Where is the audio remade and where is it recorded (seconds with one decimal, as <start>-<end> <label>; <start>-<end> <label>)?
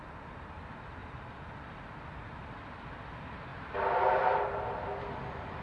0.0-5.6 recorded